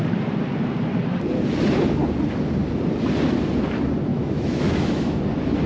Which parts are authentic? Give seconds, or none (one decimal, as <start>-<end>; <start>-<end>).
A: 0.0-4.1; 5.2-5.7